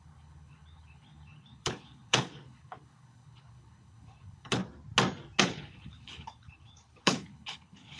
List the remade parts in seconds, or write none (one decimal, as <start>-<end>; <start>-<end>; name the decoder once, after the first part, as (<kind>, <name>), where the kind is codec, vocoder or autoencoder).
0.0-4.6 (codec, HILCodec); 5.4-8.0